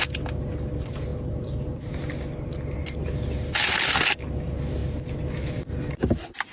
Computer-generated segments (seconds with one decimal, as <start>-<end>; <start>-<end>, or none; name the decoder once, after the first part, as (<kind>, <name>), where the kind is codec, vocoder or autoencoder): none